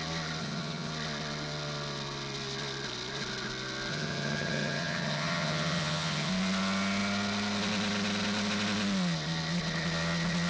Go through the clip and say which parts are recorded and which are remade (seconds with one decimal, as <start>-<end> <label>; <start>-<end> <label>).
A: 0.0-0.4 recorded; 0.4-0.9 remade; 0.9-3.9 recorded; 3.9-6.3 remade; 6.3-10.5 recorded